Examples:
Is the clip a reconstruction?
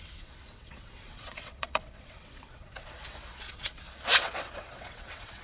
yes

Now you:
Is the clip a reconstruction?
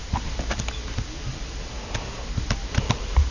no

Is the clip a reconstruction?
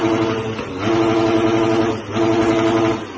no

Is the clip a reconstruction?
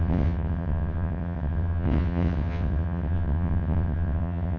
yes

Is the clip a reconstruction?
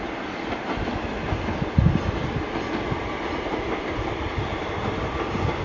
no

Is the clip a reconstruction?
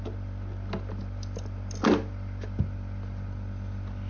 no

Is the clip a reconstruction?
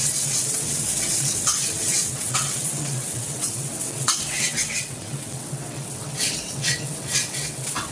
yes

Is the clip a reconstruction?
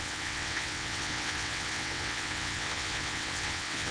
yes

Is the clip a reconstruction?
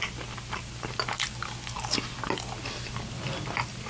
no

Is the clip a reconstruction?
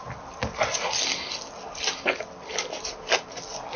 no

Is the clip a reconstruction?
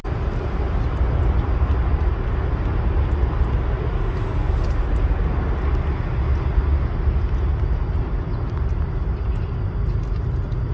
no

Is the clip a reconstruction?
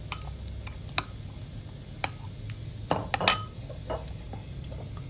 no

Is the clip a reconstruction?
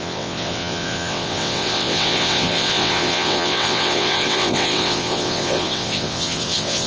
yes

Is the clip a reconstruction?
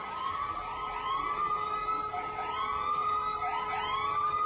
no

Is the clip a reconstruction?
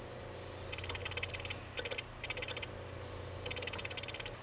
no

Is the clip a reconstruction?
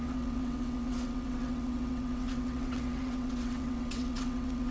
yes